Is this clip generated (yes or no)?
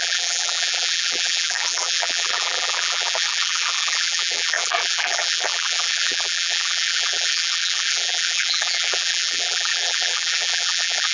yes